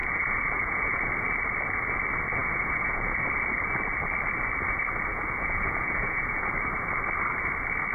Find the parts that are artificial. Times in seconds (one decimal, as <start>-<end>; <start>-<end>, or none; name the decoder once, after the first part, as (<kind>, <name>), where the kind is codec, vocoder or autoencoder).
0.0-1.1 (vocoder, Vocos); 2.4-3.2; 5.1-6.5